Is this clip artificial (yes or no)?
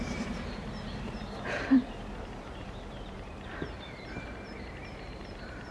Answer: yes